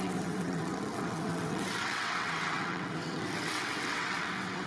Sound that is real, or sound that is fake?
fake